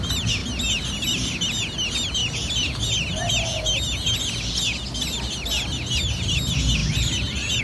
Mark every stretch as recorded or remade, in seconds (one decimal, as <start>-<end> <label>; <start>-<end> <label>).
0.0-7.6 recorded